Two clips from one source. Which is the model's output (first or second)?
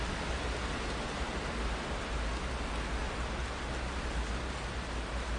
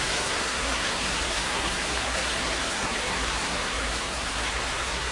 second